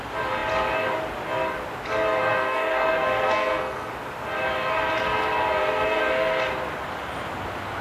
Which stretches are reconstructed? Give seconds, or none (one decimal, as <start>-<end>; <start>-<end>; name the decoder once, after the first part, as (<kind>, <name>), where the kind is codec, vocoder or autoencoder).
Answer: 2.2-3.9 (codec, SNAC); 5.6-6.4